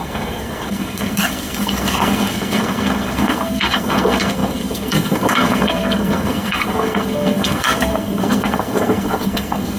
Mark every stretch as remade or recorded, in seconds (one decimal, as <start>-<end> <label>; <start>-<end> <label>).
0.0-9.8 remade